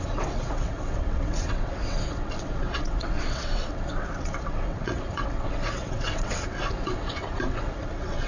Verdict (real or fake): fake